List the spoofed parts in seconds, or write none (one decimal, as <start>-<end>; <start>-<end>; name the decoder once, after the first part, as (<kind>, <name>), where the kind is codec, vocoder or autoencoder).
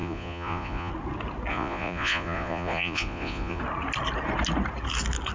0.0-0.9 (vocoder, Vocos); 1.5-3.6